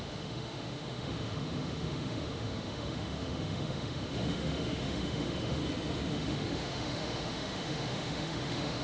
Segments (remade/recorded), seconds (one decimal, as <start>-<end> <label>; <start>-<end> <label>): 0.0-5.6 remade; 5.6-6.1 recorded; 6.1-8.8 remade